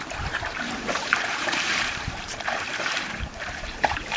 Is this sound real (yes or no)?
no